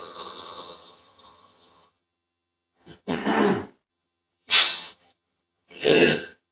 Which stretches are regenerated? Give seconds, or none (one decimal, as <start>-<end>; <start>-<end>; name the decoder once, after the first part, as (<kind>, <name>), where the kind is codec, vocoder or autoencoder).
0.0-3.2 (vocoder, HiFi-GAN); 3.9-6.5